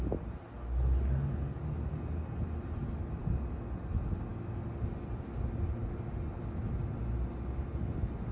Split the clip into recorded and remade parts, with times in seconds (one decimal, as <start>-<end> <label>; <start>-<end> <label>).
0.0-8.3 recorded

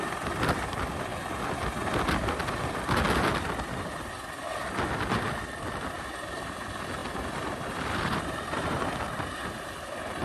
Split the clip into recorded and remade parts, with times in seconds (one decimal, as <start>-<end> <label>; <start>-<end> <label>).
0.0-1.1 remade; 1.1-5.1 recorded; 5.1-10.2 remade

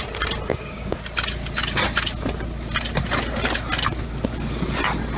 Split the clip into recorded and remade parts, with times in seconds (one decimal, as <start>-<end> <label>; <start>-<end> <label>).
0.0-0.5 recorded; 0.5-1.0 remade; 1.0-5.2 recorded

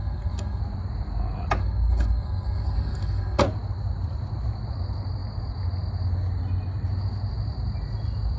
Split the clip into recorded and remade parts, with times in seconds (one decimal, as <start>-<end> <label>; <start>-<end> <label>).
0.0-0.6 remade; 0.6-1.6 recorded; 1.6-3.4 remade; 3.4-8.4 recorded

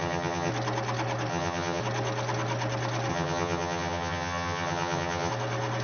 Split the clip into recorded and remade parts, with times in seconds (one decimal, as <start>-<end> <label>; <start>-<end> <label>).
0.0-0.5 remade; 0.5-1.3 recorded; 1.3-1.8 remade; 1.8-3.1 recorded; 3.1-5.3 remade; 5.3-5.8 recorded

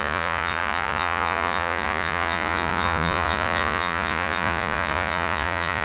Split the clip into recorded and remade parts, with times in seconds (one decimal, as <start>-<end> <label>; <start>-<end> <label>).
0.0-5.8 remade